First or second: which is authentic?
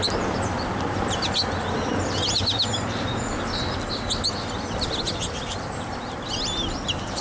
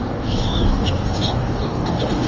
first